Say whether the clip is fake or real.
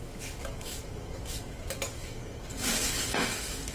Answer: fake